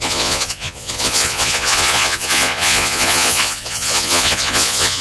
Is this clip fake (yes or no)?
yes